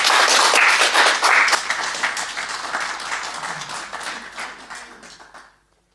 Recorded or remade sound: recorded